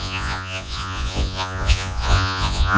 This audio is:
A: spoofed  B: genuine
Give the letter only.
A